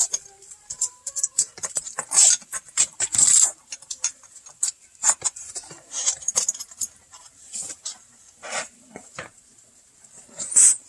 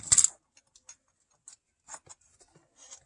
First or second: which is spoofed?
first